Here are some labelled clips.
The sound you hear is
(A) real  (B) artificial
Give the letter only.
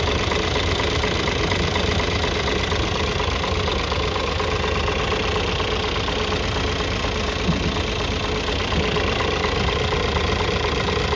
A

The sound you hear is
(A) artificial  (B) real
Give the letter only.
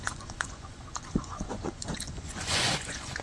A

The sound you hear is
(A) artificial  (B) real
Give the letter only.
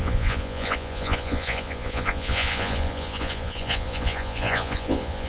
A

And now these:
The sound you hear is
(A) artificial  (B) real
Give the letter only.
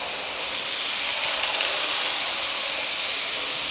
B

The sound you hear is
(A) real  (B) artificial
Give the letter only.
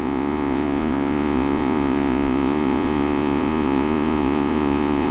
B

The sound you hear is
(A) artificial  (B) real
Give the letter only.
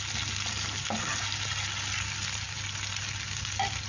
B